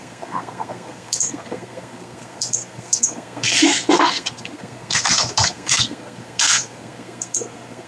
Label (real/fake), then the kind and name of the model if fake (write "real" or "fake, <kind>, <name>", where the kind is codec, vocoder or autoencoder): fake, codec, SNAC